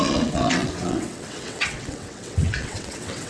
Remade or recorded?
remade